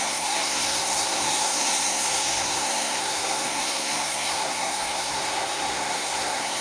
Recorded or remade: remade